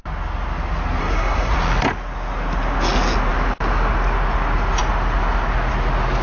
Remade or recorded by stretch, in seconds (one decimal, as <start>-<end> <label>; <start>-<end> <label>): 0.0-1.0 recorded; 1.0-1.5 remade; 1.5-6.2 recorded